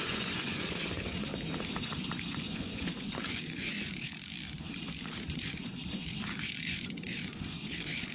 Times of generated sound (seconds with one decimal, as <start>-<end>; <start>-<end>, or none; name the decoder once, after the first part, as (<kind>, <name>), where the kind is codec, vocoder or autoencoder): 0.0-1.3 (vocoder, Vocos); 1.8-4.1; 5.0-8.1